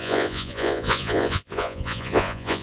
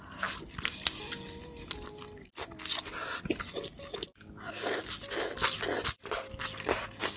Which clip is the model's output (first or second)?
first